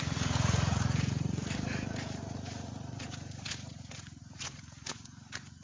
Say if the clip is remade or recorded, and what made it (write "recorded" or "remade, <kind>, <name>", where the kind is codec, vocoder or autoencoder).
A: remade, vocoder, Vocos